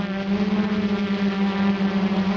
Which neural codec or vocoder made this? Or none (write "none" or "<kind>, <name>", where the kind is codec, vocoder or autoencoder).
none